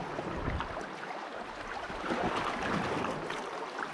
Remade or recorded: recorded